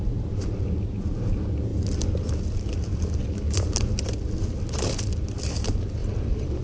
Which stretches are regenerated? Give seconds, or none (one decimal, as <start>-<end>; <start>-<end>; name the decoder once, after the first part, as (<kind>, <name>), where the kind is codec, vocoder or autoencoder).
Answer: 6.0-6.6 (vocoder, BigVGAN v2)